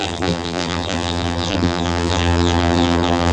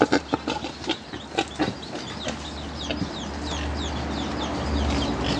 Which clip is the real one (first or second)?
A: second